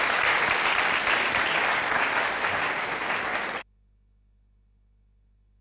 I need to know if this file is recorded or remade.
recorded